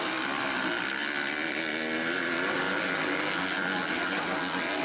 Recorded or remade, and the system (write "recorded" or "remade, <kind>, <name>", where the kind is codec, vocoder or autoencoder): recorded